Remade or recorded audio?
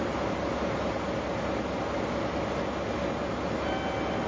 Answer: recorded